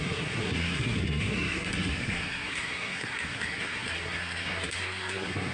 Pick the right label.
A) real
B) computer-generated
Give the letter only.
B